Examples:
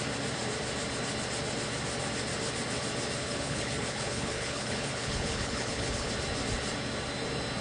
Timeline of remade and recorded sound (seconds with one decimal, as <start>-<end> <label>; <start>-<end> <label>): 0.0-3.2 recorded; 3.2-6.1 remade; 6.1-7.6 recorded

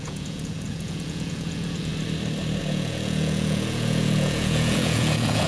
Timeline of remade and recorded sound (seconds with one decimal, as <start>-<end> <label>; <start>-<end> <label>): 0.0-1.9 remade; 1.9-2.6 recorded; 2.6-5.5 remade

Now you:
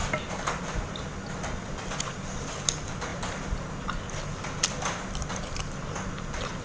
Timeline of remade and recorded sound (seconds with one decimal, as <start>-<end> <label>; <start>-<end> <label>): 0.0-6.6 recorded

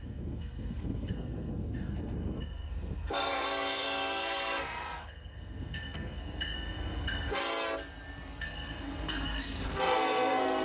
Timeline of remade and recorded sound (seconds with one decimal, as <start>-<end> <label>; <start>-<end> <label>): 0.0-7.4 remade; 7.4-8.4 recorded; 8.4-10.6 remade

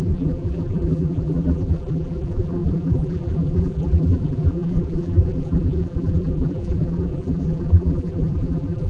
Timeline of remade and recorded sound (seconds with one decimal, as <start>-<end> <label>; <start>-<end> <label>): 0.0-8.9 remade

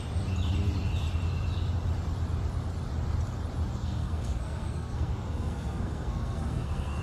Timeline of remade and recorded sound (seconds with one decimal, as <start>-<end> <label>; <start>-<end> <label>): 0.0-3.8 recorded; 3.8-7.0 remade

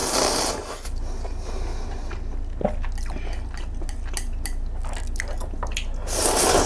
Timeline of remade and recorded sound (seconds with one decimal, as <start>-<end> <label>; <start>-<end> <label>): 0.0-6.7 recorded

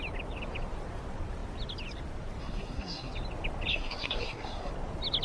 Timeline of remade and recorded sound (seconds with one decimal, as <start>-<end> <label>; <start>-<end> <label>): 0.0-2.4 recorded; 2.4-3.1 remade; 3.1-3.7 recorded; 3.7-4.7 remade; 4.7-5.2 recorded